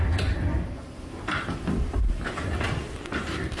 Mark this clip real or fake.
real